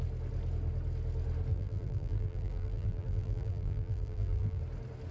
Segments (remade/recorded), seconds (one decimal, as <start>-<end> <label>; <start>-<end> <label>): 0.0-1.5 recorded; 1.5-4.6 remade; 4.6-5.1 recorded

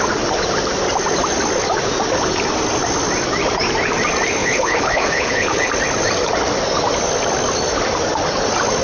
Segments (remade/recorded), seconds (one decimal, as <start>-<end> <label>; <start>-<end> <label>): 0.0-4.4 recorded; 4.4-5.7 remade; 5.7-8.8 recorded

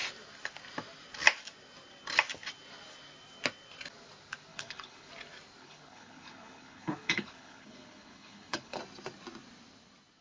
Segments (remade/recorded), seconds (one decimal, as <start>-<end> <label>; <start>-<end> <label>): 0.0-4.5 recorded; 4.5-5.1 remade; 5.1-5.6 recorded; 5.6-8.8 remade; 8.8-10.2 recorded

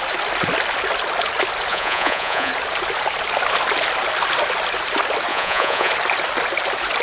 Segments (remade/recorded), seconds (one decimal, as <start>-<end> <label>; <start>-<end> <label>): 0.0-1.7 recorded; 1.7-2.5 remade; 2.5-5.3 recorded; 5.3-5.9 remade; 5.9-7.0 recorded

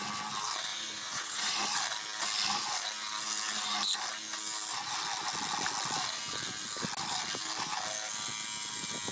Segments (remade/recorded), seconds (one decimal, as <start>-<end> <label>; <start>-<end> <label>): 0.0-0.7 recorded; 0.7-1.6 remade; 1.6-9.1 recorded

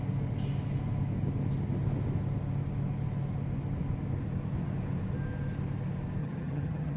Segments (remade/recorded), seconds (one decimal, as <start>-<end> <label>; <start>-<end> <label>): 0.0-6.2 recorded; 6.2-7.0 remade